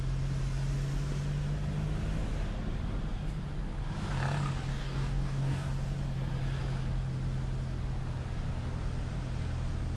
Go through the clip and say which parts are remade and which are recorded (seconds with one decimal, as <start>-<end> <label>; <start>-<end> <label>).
0.0-4.7 recorded; 4.7-5.7 remade; 5.7-10.0 recorded